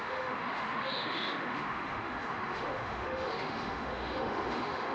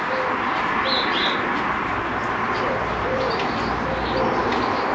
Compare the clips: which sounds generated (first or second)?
first